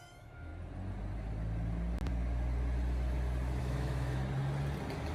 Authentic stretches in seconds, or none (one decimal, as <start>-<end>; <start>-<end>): 0.5-3.6; 4.2-5.1